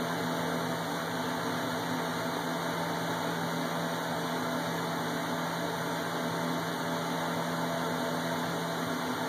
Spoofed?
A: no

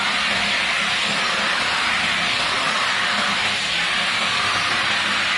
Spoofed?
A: no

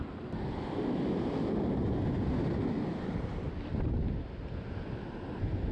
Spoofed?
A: no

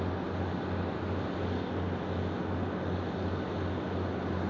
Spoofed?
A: no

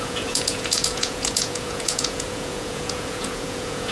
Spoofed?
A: yes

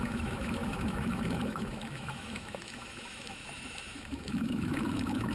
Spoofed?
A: yes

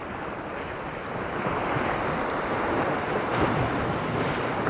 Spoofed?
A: yes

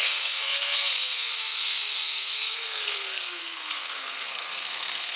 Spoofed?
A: yes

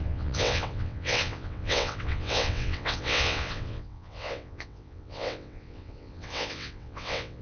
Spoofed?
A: yes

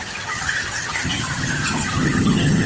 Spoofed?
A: yes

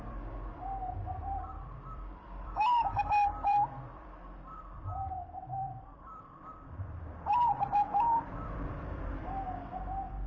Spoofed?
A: yes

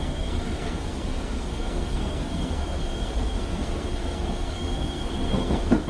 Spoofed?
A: yes